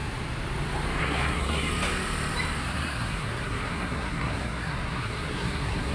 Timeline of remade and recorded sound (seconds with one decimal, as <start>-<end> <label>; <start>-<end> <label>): 0.0-1.0 recorded; 1.0-1.7 remade; 1.7-2.6 recorded; 2.6-5.9 remade